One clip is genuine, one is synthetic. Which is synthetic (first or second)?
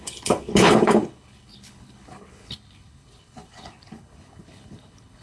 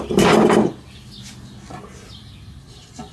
first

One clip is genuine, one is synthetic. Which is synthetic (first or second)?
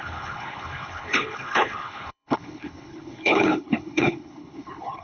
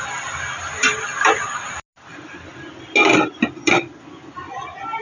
first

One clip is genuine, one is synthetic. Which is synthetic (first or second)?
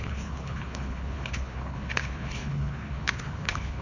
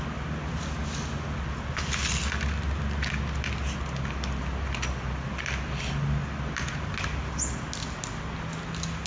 first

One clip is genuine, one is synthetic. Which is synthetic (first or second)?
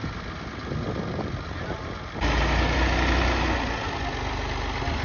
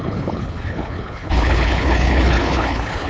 second